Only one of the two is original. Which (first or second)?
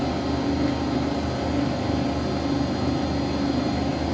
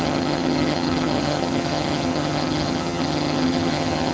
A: first